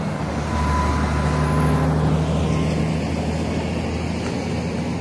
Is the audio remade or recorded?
recorded